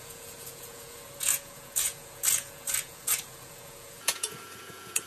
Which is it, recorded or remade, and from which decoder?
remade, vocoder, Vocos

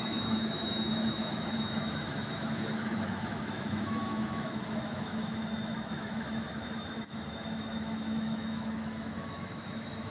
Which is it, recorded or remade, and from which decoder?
remade, autoencoder, DAC-VAE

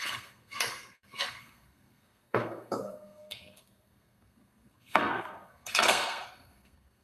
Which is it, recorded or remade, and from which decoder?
remade, codec, SNAC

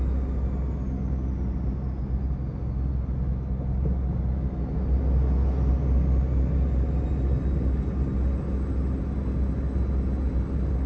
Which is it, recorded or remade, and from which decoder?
recorded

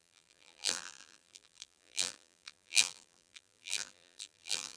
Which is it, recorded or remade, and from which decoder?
remade, vocoder, BigVGAN v2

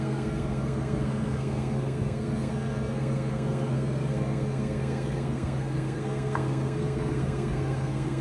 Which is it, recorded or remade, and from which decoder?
remade, codec, SNAC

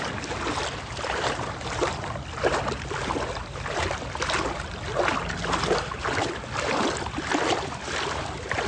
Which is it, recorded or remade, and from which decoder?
recorded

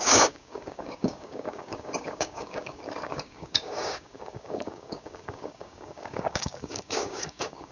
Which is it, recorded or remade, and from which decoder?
remade, codec, DAC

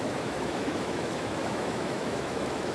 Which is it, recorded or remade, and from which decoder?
remade, autoencoder, DAC-VAE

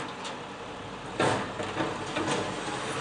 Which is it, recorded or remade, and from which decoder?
recorded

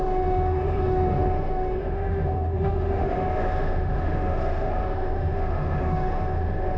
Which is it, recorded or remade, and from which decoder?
remade, autoencoder, DAC-VAE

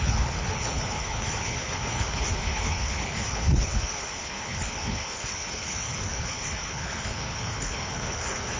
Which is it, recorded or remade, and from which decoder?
remade, codec, HILCodec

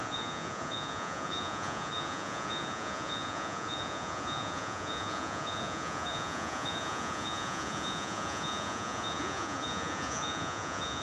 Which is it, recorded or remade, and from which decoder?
remade, vocoder, Vocos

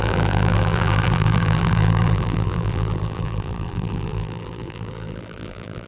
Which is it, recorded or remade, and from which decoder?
remade, vocoder, BigVGAN v2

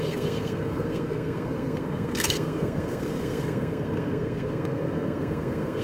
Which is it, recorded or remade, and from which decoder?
remade, codec, SNAC